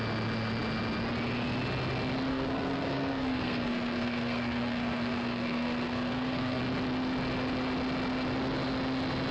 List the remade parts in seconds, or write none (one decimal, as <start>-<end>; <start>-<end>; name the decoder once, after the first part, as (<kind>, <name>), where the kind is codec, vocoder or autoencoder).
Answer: 2.3-6.6 (codec, SNAC)